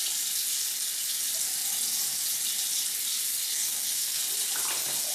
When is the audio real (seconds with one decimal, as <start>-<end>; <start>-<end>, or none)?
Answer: 0.0-3.5; 4.2-5.1